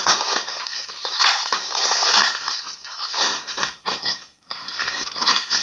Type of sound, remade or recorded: remade